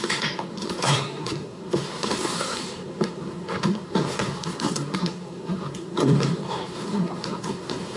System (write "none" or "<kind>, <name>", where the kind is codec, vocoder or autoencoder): codec, SNAC